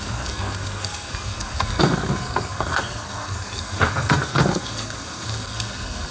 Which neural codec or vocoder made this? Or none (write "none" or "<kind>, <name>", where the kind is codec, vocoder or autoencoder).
codec, SNAC